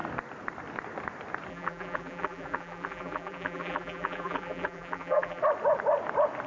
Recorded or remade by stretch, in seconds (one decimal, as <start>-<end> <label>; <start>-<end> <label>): 0.0-1.5 recorded; 1.5-5.4 remade; 5.4-6.5 recorded